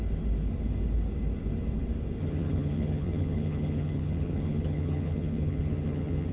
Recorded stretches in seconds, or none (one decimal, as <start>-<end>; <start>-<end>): 0.0-2.2